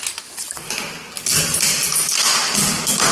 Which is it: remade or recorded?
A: recorded